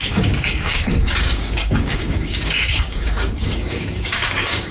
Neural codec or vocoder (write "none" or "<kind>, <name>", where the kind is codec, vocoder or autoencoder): codec, DAC